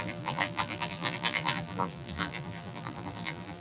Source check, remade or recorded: remade